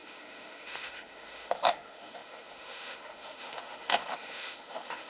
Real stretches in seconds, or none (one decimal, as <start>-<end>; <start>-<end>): none